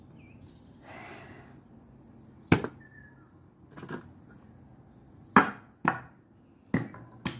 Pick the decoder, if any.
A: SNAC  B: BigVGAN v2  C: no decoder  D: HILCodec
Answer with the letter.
C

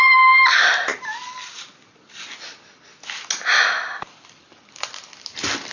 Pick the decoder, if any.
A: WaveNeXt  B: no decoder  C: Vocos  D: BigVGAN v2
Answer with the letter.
B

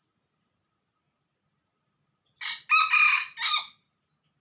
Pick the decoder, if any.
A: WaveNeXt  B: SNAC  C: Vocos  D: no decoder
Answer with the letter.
D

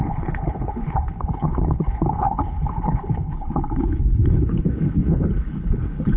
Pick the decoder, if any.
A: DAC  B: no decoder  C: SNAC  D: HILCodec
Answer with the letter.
D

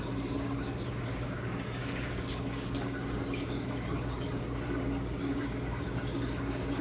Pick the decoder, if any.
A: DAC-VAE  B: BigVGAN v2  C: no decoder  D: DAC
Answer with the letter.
D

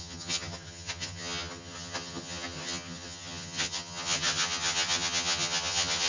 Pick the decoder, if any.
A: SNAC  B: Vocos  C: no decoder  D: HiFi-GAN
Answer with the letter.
D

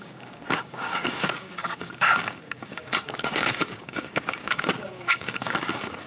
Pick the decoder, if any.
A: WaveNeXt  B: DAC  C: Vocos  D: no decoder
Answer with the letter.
B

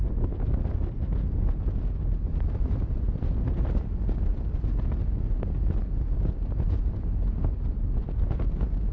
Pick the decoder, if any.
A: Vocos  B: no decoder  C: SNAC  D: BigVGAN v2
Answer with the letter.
B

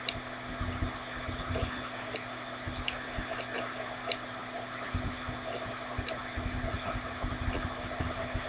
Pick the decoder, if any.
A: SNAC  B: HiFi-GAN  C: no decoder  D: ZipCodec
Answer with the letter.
C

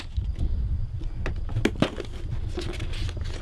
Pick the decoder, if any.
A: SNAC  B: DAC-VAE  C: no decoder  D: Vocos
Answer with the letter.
C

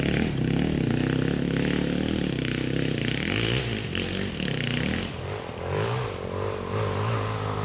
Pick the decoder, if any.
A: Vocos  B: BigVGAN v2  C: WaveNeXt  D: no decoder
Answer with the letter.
D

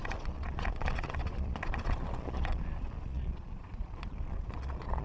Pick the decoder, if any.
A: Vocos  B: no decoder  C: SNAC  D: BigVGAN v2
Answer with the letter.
A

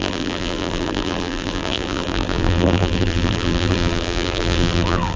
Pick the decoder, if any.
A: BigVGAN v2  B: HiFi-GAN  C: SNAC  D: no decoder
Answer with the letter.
A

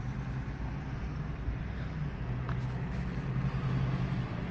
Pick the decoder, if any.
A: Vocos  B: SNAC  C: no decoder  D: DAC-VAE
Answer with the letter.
C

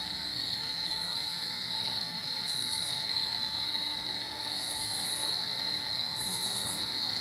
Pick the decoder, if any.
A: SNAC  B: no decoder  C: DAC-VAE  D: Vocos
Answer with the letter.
A